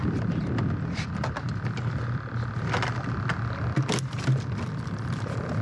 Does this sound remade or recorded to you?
recorded